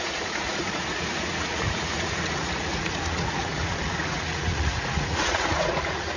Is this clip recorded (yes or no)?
no